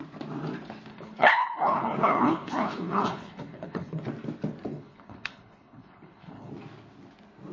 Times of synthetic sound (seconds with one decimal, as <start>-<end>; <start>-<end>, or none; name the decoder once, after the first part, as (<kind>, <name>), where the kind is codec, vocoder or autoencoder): 0.9-4.0 (codec, HILCodec); 4.7-6.5